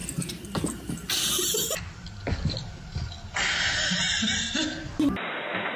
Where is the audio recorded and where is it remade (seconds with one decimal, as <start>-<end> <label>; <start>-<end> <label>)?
0.0-5.8 recorded